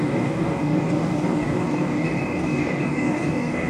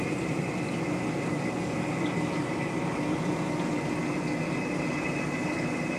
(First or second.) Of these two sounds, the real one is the second